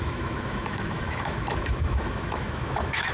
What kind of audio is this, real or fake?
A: fake